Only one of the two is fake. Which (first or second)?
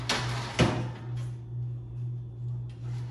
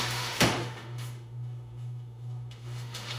second